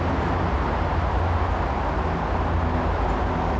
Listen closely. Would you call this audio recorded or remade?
recorded